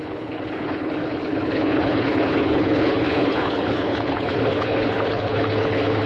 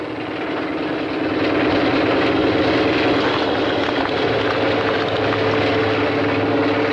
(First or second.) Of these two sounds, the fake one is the first